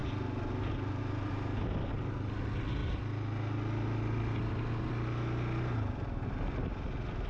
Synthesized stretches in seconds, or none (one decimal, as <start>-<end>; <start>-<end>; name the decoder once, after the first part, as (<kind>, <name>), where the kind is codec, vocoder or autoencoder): none